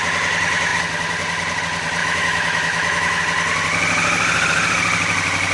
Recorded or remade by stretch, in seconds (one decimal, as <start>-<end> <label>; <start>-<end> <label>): 0.0-2.0 recorded; 2.0-3.2 remade; 3.2-5.5 recorded